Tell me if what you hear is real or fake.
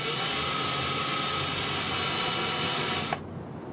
real